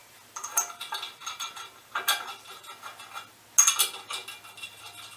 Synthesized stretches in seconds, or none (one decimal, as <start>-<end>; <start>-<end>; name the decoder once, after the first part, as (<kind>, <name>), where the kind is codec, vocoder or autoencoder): 0.0-2.7 (vocoder, BigVGAN v2)

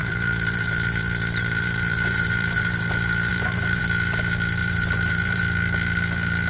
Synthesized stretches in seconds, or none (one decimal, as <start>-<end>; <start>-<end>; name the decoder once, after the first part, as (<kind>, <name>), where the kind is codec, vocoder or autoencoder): 0.0-2.9 (vocoder, BigVGAN v2); 3.3-3.8; 4.6-5.4

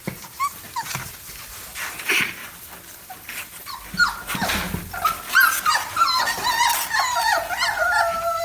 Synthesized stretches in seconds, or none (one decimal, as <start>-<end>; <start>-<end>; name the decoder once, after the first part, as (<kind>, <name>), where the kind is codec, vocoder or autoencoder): none

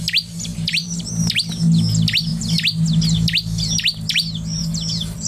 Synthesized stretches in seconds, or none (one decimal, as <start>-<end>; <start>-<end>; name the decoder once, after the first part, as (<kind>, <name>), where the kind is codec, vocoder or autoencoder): 0.5-1.1 (vocoder, BigVGAN v2)

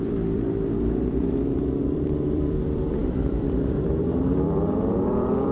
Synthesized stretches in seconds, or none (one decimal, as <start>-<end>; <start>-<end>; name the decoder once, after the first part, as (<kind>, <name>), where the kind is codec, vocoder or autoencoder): 0.0-5.5 (vocoder, BigVGAN v2)

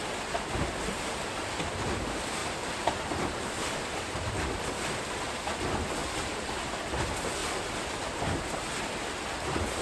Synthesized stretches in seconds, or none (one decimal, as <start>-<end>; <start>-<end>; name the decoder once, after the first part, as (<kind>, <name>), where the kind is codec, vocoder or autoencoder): 2.4-4.3 (vocoder, BigVGAN v2); 6.0-6.8

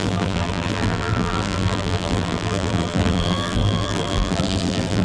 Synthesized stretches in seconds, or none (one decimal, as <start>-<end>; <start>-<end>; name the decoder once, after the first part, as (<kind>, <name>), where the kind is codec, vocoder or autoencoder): 0.0-5.0 (vocoder, BigVGAN v2)

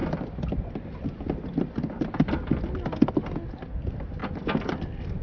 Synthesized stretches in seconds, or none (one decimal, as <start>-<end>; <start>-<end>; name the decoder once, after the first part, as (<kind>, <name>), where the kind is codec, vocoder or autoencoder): none